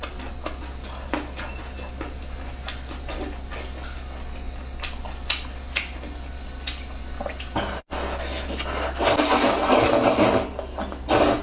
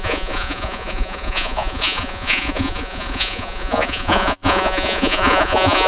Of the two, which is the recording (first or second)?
first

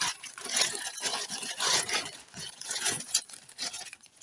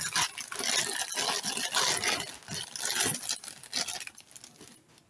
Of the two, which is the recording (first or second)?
second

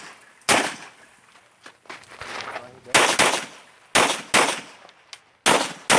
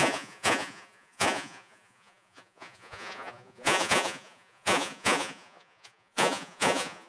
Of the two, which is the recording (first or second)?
first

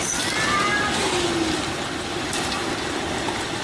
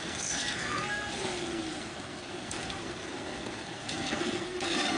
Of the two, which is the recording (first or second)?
first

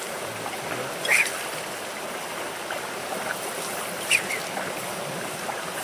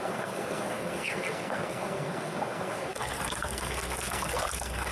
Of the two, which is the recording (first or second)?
first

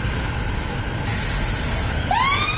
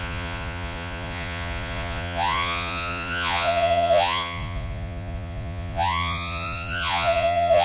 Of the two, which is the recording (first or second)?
first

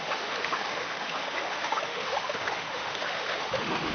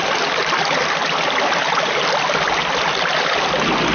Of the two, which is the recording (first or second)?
second